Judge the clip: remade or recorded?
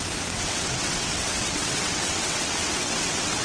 remade